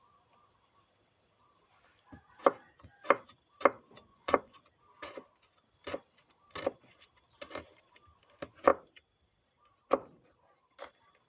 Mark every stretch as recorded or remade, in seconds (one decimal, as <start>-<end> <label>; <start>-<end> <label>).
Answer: 0.0-4.1 recorded; 4.1-4.6 remade; 4.6-11.3 recorded